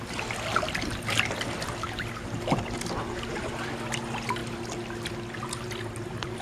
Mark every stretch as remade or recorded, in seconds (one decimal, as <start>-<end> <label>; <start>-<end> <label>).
0.0-6.4 recorded